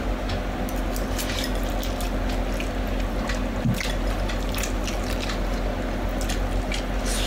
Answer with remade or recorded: recorded